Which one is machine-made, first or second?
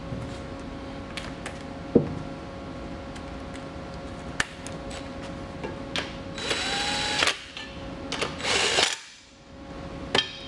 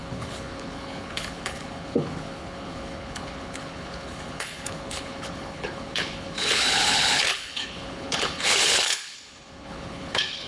second